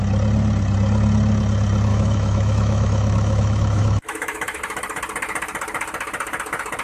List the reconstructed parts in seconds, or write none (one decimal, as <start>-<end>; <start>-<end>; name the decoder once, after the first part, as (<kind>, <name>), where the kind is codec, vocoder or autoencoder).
1.9-4.6 (autoencoder, DAC-VAE)